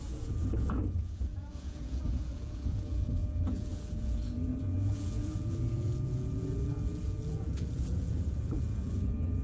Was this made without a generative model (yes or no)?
no